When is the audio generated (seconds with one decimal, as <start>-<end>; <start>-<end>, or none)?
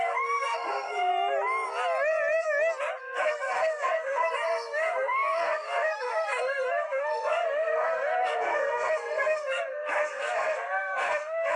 0.0-1.1; 3.0-11.6